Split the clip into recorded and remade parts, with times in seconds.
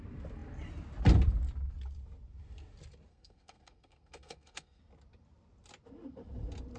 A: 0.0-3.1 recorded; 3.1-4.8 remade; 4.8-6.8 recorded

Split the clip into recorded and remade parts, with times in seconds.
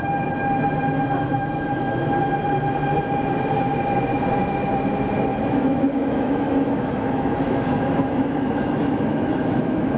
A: 0.0-1.3 recorded; 1.3-2.0 remade; 2.0-5.3 recorded; 5.3-10.0 remade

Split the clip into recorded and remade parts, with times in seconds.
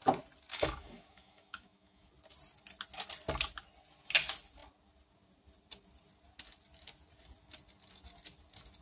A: 0.0-0.5 recorded; 0.5-2.1 remade; 2.1-8.8 recorded